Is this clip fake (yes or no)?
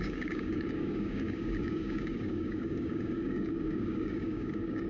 yes